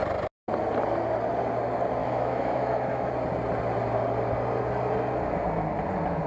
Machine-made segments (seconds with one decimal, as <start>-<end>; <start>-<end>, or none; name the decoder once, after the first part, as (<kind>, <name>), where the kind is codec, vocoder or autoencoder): 2.0-3.1 (autoencoder, DAC-VAE)

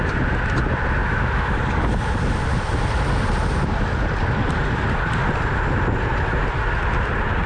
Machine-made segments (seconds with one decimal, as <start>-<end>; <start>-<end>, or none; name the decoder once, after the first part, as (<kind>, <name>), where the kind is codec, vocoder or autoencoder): 1.0-1.6 (autoencoder, DAC-VAE)